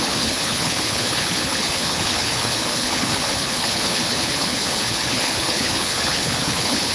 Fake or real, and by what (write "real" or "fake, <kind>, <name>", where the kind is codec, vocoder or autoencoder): fake, codec, HILCodec